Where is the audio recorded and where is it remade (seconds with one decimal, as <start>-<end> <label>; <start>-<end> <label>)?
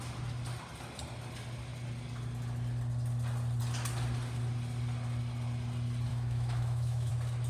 0.0-6.1 recorded; 6.1-7.1 remade; 7.1-7.5 recorded